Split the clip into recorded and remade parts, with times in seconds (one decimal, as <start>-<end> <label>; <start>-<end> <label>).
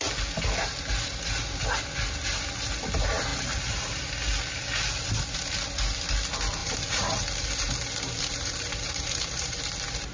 0.0-6.6 recorded; 6.6-9.6 remade; 9.6-10.1 recorded